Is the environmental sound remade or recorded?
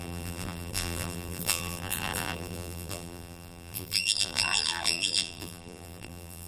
remade